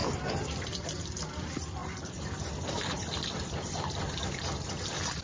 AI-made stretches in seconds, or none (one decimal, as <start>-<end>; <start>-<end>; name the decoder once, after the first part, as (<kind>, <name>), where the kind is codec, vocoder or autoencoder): 0.0-0.7 (vocoder, BigVGAN v2); 1.8-4.7